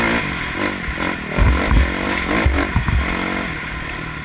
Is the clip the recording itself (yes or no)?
yes